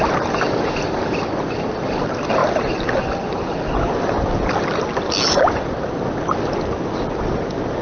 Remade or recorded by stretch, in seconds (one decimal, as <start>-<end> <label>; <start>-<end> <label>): 0.0-7.8 recorded